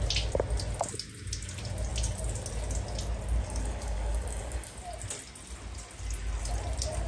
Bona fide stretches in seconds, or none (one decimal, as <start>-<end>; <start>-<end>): 0.0-3.4; 4.8-7.1